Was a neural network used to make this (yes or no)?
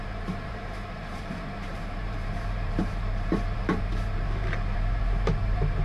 yes